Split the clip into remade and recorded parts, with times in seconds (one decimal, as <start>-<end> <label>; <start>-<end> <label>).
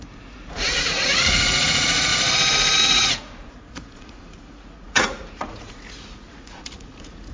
0.0-2.1 remade; 2.1-2.8 recorded; 2.8-7.3 remade